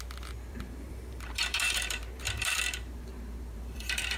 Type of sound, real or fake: fake